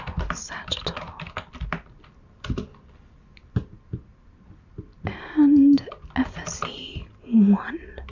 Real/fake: real